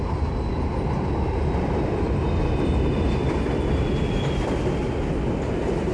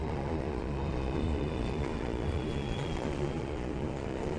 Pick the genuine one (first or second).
first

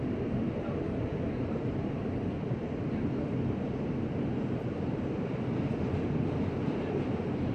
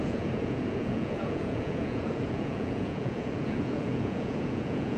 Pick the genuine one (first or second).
first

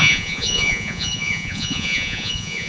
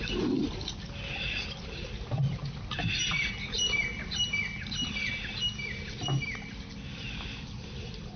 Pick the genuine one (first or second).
second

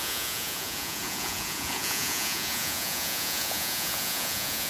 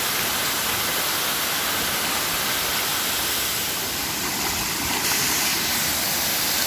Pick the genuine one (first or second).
second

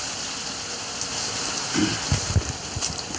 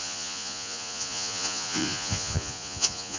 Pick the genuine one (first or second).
first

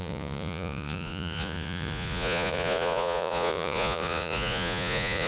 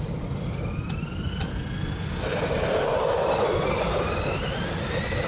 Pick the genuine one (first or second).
second